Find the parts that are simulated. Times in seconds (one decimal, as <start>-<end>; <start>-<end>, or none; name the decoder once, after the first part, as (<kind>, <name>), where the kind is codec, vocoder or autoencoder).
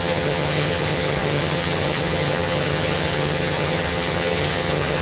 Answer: 0.0-5.0 (vocoder, HiFi-GAN)